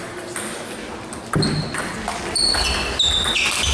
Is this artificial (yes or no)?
no